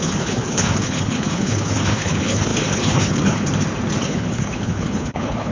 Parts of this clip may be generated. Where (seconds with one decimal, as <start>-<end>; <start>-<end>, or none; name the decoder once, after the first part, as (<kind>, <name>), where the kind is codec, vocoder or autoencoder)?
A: 0.0-3.5 (codec, HILCodec); 4.0-5.5